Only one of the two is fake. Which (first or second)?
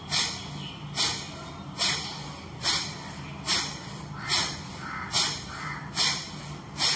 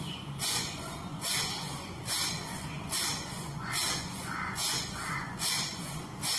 second